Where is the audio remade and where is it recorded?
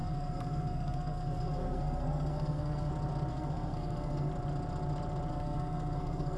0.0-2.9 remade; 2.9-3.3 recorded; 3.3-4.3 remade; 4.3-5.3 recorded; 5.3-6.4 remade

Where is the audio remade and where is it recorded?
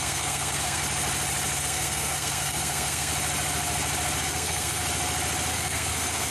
0.0-0.8 remade; 0.8-1.6 recorded; 1.6-3.1 remade; 3.1-4.2 recorded; 4.2-4.8 remade; 4.8-5.5 recorded; 5.5-6.3 remade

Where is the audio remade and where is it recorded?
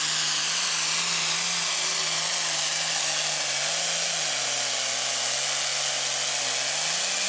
0.0-7.3 recorded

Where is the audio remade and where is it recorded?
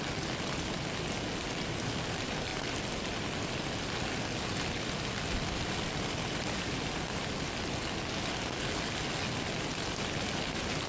0.0-10.9 recorded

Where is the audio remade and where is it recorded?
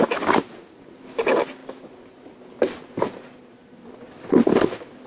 0.0-5.1 recorded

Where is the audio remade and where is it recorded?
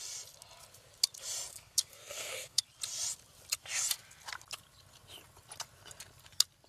0.0-1.5 recorded; 1.5-2.6 remade; 2.6-6.7 recorded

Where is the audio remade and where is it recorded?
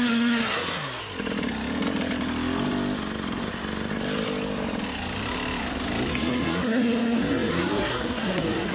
0.0-1.0 remade; 1.0-6.1 recorded; 6.1-8.7 remade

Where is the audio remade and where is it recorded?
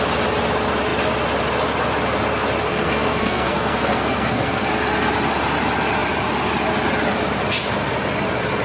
0.0-2.7 recorded; 2.7-4.7 remade; 4.7-8.6 recorded